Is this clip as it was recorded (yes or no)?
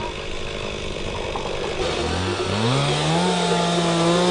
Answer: yes